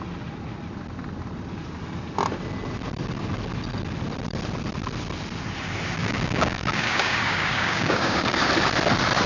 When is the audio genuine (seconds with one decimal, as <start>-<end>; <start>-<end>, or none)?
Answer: 0.0-6.0; 8.5-9.3